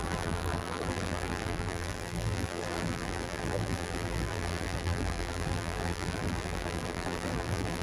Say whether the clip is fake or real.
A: fake